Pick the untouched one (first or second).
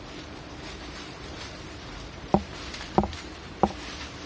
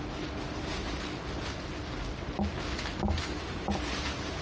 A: second